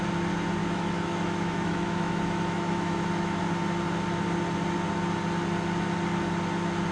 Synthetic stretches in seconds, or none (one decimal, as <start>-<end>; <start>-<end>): 0.6-3.4